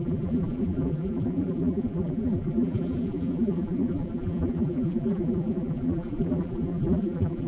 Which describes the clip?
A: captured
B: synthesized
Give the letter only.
B